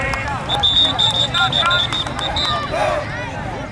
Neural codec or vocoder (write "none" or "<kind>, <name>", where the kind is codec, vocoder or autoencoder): none